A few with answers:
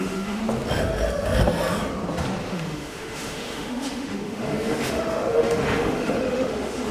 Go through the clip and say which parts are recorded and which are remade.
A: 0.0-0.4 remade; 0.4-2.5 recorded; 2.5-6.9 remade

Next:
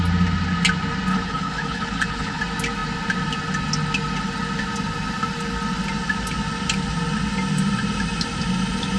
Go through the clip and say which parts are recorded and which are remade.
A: 0.0-1.1 recorded; 1.1-2.4 remade; 2.4-9.0 recorded

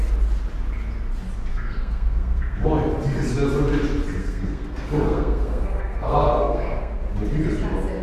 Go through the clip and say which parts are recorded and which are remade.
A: 0.0-1.5 recorded; 1.5-2.7 remade; 2.7-4.2 recorded; 4.2-6.9 remade; 6.9-8.0 recorded

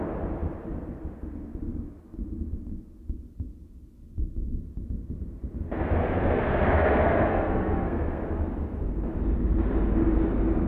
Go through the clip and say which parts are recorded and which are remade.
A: 0.0-6.0 recorded; 6.0-8.2 remade; 8.2-10.7 recorded

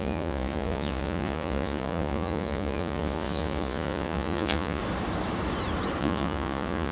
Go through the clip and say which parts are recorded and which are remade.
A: 0.0-4.8 remade; 4.8-6.0 recorded; 6.0-6.9 remade